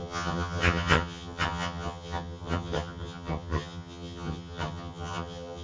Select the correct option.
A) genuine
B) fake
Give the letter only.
B